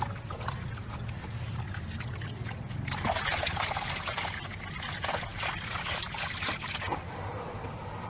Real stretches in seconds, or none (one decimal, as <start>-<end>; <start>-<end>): 0.0-8.1